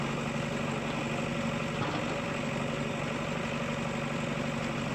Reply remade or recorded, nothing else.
recorded